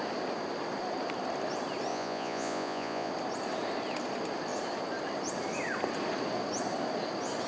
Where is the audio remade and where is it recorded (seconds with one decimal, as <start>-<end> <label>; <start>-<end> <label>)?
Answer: 0.0-1.9 recorded; 1.9-3.1 remade; 3.1-7.5 recorded